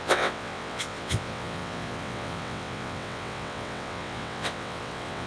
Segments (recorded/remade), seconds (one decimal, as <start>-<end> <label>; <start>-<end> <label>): 0.0-5.3 remade

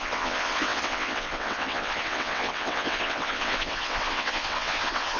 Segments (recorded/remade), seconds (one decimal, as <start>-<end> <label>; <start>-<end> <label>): 0.0-5.2 remade

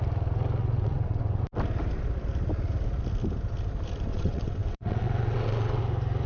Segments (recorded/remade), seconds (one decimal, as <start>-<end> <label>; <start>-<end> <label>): 0.0-0.6 recorded; 0.6-1.4 remade; 1.4-4.1 recorded; 4.1-5.8 remade; 5.8-6.3 recorded

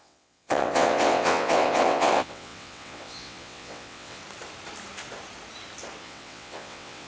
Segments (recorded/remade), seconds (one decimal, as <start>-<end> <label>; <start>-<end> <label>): 0.0-4.2 remade; 4.2-6.0 recorded; 6.0-7.1 remade

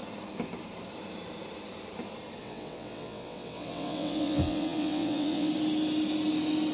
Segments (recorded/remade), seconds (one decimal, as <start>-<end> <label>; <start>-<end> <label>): 0.0-2.4 recorded; 2.4-5.5 remade; 5.5-6.7 recorded